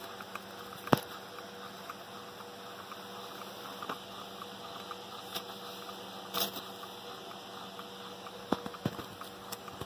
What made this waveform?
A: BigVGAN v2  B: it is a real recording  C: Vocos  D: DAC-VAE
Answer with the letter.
B